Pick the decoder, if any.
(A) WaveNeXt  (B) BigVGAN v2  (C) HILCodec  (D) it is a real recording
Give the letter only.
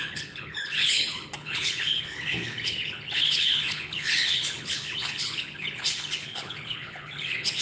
C